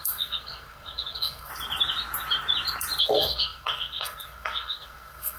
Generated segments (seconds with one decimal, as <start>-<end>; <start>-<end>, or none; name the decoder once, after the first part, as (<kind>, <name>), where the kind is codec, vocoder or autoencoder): 0.0-1.5 (codec, SNAC); 3.0-5.4

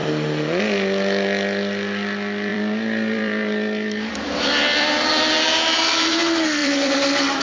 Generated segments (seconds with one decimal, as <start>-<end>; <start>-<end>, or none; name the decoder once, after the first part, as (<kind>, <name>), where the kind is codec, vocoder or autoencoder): 2.5-5.1 (vocoder, BigVGAN v2); 6.6-7.4

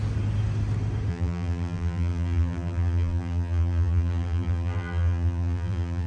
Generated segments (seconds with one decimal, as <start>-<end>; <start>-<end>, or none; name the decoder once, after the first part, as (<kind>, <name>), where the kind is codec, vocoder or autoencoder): 1.1-6.1 (vocoder, BigVGAN v2)

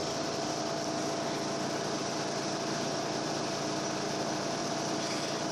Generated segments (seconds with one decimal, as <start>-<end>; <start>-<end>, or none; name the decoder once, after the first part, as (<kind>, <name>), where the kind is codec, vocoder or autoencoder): 0.0-0.6 (vocoder, BigVGAN v2); 2.0-3.4; 4.6-5.5

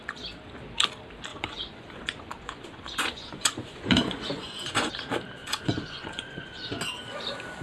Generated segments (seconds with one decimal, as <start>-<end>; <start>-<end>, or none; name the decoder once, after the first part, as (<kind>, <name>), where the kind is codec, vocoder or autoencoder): 1.3-4.9 (vocoder, Vocos); 5.4-6.8